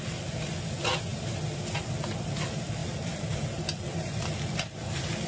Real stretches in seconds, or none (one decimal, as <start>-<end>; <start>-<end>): 0.0-5.3